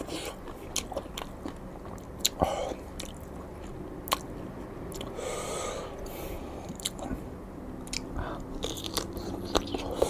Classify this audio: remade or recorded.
recorded